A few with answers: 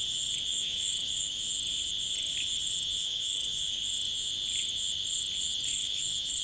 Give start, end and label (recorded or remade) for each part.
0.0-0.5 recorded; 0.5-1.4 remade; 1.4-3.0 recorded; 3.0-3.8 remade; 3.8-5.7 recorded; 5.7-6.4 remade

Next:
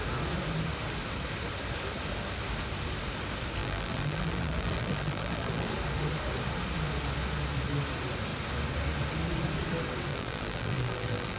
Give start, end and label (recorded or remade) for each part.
0.0-3.6 recorded; 3.6-5.7 remade; 5.7-10.1 recorded; 10.1-11.4 remade

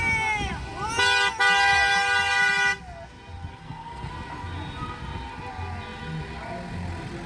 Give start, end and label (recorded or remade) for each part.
0.0-3.5 recorded; 3.5-4.1 remade; 4.1-7.3 recorded

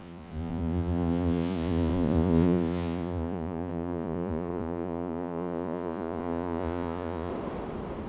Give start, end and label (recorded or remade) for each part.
0.0-7.3 remade; 7.3-8.1 recorded